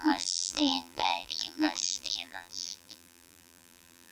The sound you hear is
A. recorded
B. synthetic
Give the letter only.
B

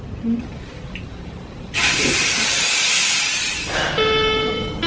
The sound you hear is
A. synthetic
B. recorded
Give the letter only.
A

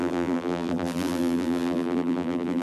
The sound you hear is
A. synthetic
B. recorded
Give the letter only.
A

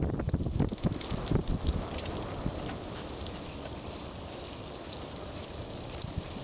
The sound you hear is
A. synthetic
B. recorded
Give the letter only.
A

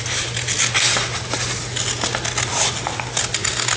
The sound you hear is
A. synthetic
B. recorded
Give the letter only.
B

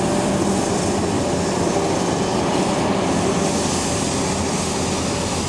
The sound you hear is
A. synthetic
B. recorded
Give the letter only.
B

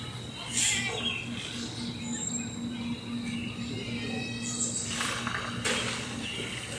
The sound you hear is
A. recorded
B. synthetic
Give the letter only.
A